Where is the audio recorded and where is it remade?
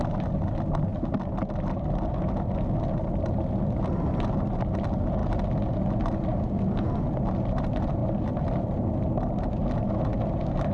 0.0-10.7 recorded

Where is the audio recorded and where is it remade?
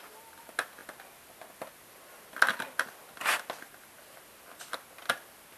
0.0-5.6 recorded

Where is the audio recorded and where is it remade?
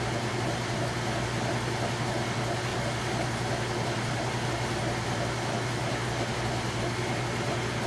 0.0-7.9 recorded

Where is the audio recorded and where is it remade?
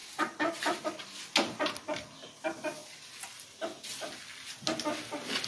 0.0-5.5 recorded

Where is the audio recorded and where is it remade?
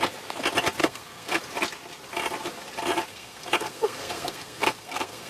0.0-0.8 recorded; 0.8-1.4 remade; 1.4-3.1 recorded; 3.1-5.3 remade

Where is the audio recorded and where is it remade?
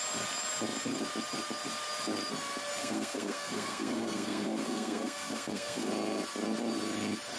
0.0-2.8 recorded; 2.8-5.9 remade; 5.9-7.4 recorded